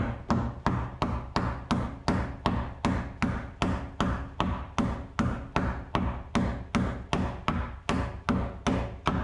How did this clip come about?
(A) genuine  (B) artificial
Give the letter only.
A